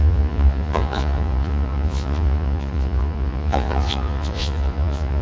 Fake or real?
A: fake